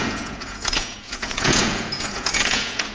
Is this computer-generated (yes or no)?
yes